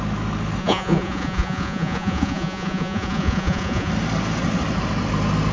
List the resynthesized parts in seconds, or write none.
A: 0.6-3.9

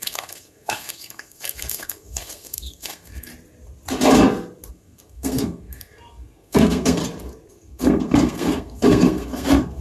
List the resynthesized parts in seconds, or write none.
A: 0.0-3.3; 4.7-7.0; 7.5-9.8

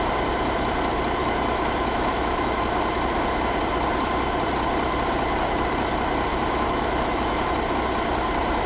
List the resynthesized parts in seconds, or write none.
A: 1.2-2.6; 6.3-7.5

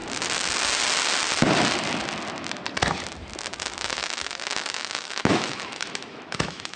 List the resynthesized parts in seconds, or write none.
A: 4.0-6.8